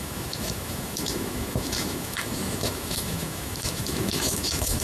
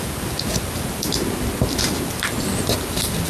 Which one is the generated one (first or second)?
first